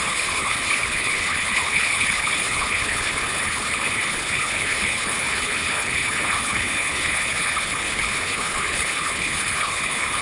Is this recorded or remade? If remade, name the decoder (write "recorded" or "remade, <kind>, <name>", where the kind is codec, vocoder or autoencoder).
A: remade, codec, HILCodec